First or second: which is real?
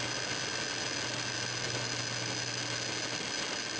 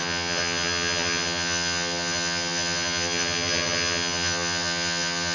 first